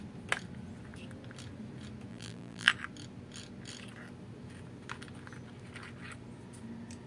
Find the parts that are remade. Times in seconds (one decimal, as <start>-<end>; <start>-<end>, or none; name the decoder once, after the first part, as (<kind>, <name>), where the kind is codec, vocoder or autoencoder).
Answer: 2.1-2.7 (vocoder, BigVGAN v2)